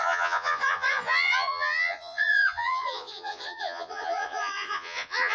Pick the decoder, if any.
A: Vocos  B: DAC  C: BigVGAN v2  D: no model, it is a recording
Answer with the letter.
A